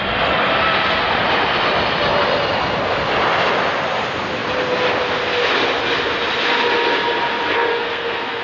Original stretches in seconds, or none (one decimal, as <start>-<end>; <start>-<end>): 0.0-7.7